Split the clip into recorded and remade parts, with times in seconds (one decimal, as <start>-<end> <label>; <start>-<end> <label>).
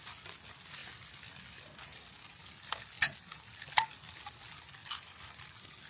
0.0-4.8 recorded; 4.8-5.4 remade; 5.4-5.9 recorded